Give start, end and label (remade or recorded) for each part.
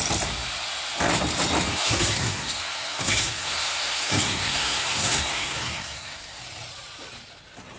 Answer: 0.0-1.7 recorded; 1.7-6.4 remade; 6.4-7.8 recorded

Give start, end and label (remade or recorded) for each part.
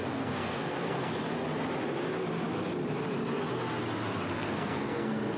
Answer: 0.0-1.1 remade; 1.1-4.3 recorded; 4.3-5.4 remade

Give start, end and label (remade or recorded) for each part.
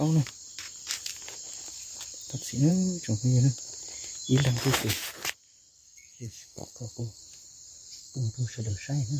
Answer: 0.0-5.7 recorded; 5.7-7.2 remade; 7.2-8.0 recorded; 8.0-8.7 remade; 8.7-9.2 recorded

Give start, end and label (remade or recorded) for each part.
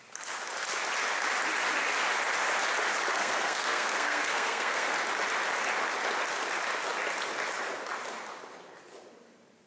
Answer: 0.0-3.1 recorded; 3.1-4.9 remade; 4.9-9.7 recorded